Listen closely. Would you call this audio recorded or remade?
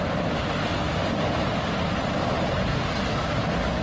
recorded